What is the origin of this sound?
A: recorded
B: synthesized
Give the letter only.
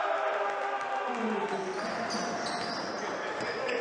A